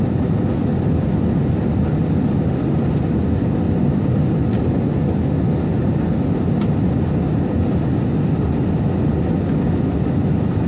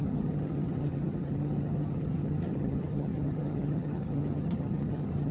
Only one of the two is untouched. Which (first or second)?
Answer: first